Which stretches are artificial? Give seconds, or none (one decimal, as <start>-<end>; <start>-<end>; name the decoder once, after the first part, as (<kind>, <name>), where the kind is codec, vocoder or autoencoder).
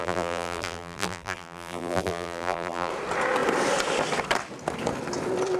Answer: 0.0-2.9 (vocoder, BigVGAN v2)